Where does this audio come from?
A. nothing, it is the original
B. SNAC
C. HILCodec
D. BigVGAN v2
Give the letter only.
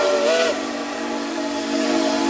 D